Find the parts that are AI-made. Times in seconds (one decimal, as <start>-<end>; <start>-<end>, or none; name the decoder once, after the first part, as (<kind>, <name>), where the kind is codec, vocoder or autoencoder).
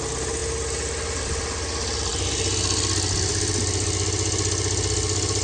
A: none